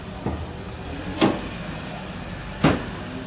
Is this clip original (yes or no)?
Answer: yes